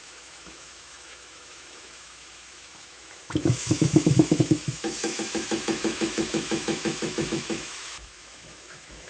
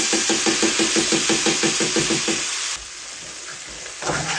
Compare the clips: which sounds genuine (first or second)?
second